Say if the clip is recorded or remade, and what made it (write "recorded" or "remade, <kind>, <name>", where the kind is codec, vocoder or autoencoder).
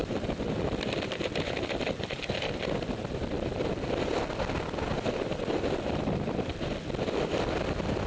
remade, vocoder, BigVGAN v2